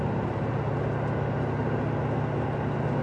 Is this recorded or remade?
recorded